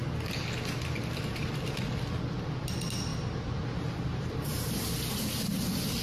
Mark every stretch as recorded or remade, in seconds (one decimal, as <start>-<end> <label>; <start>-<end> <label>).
0.0-1.0 recorded; 1.0-1.6 remade; 1.6-3.1 recorded; 3.1-5.2 remade; 5.2-6.0 recorded